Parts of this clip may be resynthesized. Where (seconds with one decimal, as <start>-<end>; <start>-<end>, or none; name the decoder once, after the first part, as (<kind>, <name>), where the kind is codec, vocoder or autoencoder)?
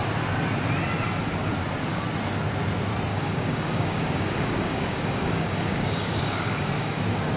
3.1-7.0 (codec, DAC)